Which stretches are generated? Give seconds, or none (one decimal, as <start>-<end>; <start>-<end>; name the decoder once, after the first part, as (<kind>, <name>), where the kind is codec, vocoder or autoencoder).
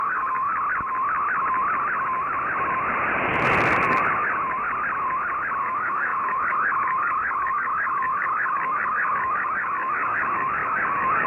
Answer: 0.0-0.5 (codec, DAC); 5.6-11.3